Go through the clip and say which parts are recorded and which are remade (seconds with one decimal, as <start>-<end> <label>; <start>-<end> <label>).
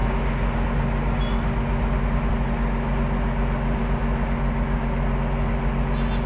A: 0.0-6.3 recorded